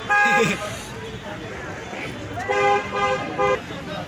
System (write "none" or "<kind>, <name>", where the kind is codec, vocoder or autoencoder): none